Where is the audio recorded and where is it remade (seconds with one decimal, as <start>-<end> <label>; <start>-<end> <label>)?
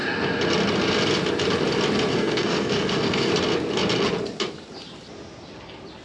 0.0-2.1 recorded; 2.1-3.3 remade; 3.3-6.0 recorded